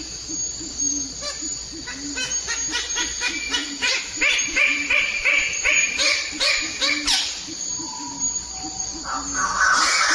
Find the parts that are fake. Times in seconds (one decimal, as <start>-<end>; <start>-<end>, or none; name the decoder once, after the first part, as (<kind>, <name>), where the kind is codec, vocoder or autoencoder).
3.6-8.2 (vocoder, BigVGAN v2)